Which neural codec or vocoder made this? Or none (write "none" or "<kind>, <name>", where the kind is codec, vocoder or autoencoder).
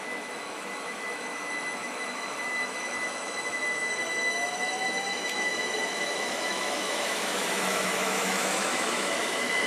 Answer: autoencoder, DAC-VAE